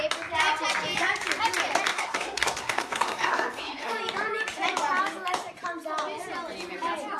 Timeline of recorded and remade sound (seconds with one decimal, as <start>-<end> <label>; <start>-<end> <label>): 0.0-1.9 recorded; 1.9-3.9 remade; 3.9-7.2 recorded